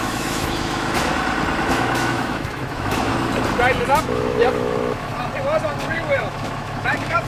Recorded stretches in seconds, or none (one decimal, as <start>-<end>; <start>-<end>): 1.1-1.6; 3.1-4.0; 5.1-5.9